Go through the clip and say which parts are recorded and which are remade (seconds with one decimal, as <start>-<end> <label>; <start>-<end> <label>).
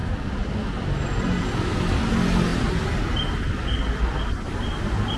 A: 0.0-5.2 recorded